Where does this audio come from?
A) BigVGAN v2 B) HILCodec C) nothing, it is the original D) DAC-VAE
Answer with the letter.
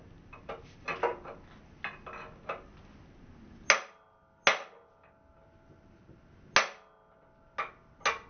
C